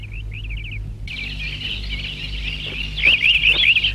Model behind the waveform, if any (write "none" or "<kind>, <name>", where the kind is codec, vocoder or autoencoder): none